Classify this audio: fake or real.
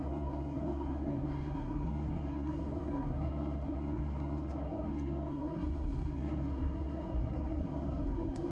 fake